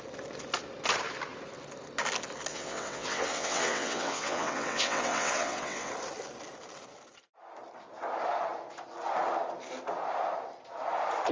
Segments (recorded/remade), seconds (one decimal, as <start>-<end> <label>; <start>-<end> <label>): 0.0-2.5 recorded; 2.5-5.9 remade; 5.9-11.3 recorded